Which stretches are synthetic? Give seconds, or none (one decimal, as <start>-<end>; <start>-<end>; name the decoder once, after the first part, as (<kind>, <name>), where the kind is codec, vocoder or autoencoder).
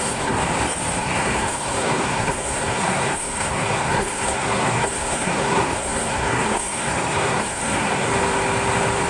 0.0-0.4 (codec, SNAC); 1.0-8.1